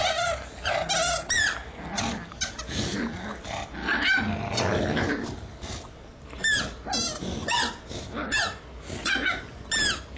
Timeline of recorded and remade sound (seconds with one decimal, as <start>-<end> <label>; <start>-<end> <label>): 0.0-7.4 recorded; 7.4-7.9 remade; 7.9-9.0 recorded; 9.0-9.7 remade; 9.7-10.2 recorded